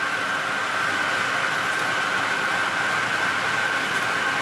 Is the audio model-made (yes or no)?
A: no